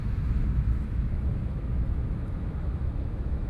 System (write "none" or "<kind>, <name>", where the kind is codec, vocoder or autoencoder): autoencoder, DAC-VAE